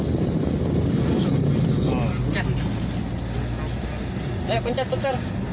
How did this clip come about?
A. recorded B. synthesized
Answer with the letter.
A